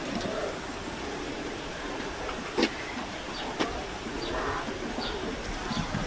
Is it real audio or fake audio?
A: real